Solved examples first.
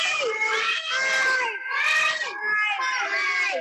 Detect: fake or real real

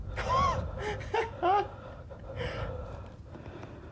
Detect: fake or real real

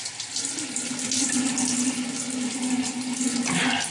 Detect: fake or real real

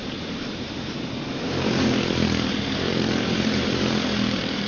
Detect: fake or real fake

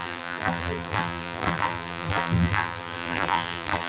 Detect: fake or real fake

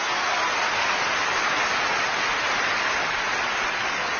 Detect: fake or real real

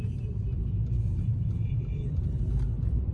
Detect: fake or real fake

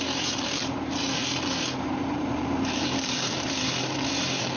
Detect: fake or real fake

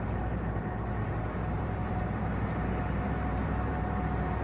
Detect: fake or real fake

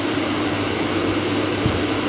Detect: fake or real fake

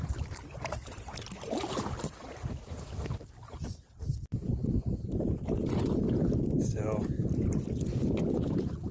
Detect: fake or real fake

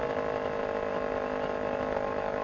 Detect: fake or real real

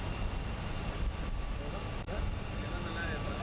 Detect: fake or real real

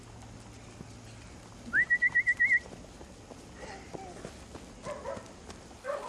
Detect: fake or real real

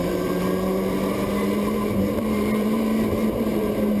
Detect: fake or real fake